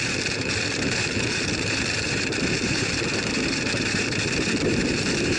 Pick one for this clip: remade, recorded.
remade